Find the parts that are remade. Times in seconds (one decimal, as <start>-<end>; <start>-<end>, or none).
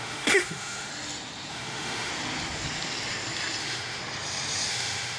0.0-0.9; 1.5-2.1; 3.6-4.0; 4.7-5.2